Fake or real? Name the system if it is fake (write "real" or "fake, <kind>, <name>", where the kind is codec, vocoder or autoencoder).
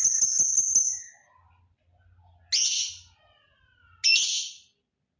real